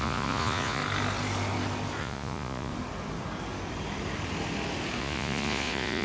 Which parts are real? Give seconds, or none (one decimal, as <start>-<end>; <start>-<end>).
0.8-2.0; 2.7-5.0